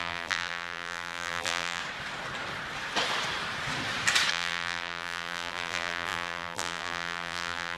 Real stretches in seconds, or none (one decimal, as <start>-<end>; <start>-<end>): 1.8-4.3